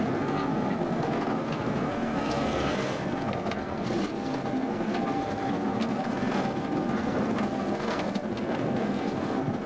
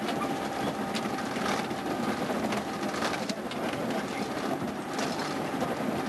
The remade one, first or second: first